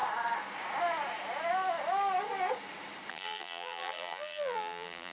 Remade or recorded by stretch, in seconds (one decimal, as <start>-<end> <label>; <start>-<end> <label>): 0.0-3.1 recorded; 3.1-5.1 remade